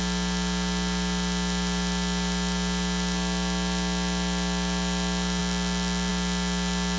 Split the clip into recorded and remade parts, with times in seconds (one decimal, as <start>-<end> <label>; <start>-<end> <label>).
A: 0.0-7.0 recorded